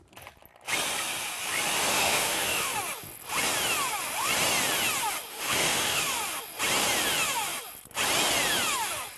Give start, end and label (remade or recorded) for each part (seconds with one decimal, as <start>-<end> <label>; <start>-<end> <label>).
0.0-1.9 recorded; 1.9-2.7 remade; 2.7-5.3 recorded; 5.3-6.0 remade; 6.0-9.2 recorded